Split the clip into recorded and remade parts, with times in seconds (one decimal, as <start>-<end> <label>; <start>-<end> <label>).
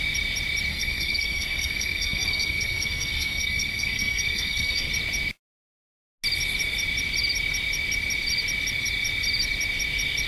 0.0-0.7 recorded; 0.7-4.9 remade; 4.9-10.3 recorded